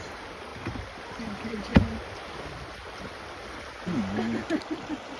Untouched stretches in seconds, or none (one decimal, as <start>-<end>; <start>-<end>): 0.0-5.2